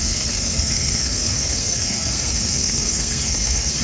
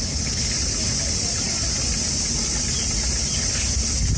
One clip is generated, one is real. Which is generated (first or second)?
first